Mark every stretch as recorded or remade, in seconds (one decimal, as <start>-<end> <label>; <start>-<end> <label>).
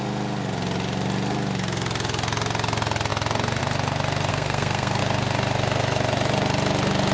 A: 0.0-4.3 recorded; 4.3-5.0 remade; 5.0-7.1 recorded